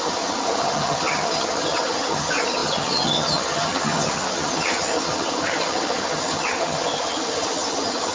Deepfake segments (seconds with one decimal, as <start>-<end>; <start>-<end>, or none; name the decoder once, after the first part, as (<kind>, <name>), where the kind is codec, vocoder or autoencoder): 0.0-8.1 (vocoder, HiFi-GAN)